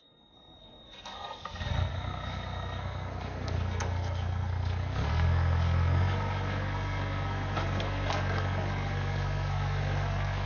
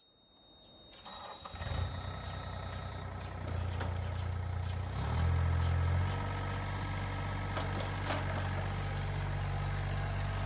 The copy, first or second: first